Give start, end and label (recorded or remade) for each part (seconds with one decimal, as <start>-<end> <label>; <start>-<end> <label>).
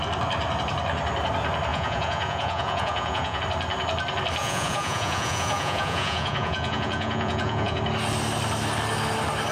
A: 0.0-1.7 recorded; 1.7-3.4 remade; 3.4-4.4 recorded; 4.4-7.8 remade; 7.8-9.5 recorded